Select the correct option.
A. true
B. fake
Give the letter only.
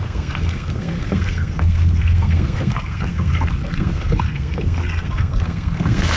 B